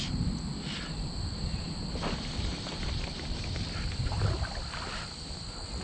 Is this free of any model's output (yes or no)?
yes